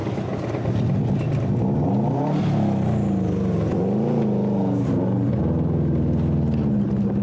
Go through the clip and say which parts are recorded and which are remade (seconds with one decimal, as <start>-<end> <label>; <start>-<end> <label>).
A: 0.0-7.2 recorded